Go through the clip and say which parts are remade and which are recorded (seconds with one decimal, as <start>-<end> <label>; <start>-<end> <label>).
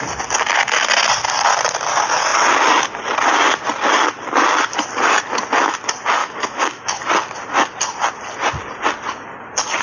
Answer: 0.0-6.2 recorded; 6.2-7.0 remade; 7.0-9.8 recorded